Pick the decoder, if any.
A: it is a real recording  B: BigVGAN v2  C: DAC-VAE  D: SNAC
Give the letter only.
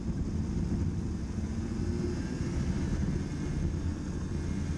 A